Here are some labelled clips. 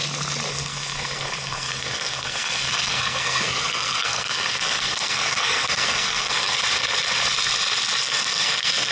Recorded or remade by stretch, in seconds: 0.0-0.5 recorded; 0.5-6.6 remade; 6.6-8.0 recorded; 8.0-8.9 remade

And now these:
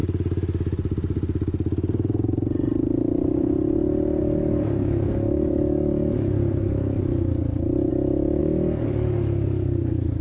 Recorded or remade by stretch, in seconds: 0.0-4.2 recorded; 4.2-7.9 remade; 7.9-8.4 recorded; 8.4-10.2 remade

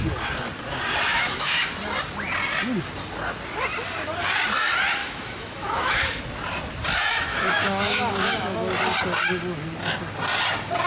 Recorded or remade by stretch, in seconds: 0.0-1.1 recorded; 1.1-1.7 remade; 1.7-5.0 recorded; 5.0-6.2 remade; 6.2-7.3 recorded; 7.3-8.7 remade; 8.7-10.9 recorded

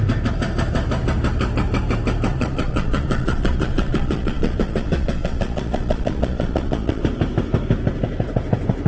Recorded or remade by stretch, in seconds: 0.0-2.3 recorded; 2.3-7.0 remade; 7.0-8.9 recorded

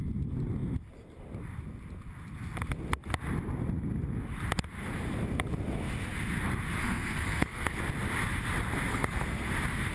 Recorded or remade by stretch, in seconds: 0.0-6.8 recorded; 6.8-7.8 remade; 7.8-8.9 recorded; 8.9-9.5 remade; 9.5-9.9 recorded

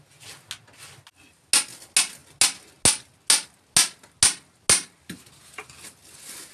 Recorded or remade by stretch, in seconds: 0.0-6.5 recorded

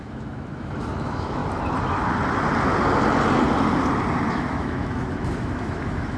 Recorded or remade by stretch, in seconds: 0.0-1.4 remade; 1.4-4.3 recorded; 4.3-6.2 remade

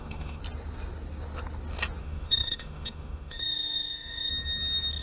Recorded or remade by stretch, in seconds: 0.0-0.4 remade; 0.4-2.0 recorded; 2.0-4.3 remade; 4.3-5.0 recorded